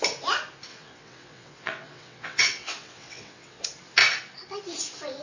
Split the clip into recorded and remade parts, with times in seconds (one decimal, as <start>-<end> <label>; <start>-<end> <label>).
0.0-0.7 recorded; 0.7-3.6 remade; 3.6-5.2 recorded